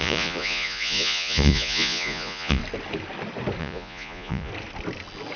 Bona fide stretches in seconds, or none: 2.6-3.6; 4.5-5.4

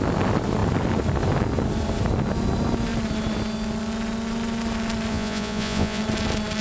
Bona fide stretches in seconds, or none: 0.0-5.1; 6.0-6.6

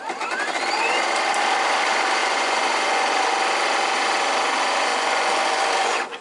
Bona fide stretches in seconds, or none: 0.0-2.2; 3.1-4.9

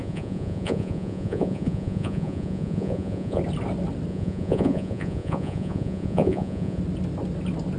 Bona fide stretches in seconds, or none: 3.4-4.1; 6.8-7.8

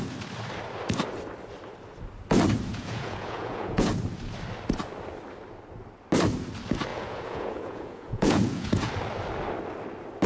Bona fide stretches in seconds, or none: 0.0-2.7; 3.9-6.9; 8.9-10.3

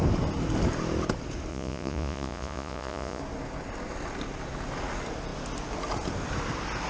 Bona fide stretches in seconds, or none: 0.0-1.5; 3.2-6.9

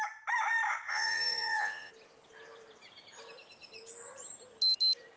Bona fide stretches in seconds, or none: 0.0-0.9; 1.9-5.2

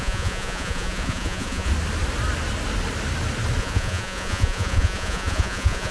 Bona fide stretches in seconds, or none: 1.7-3.6